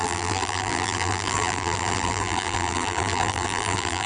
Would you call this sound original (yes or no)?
no